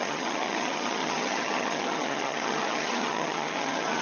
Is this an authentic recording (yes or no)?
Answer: no